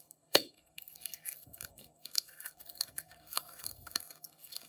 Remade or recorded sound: remade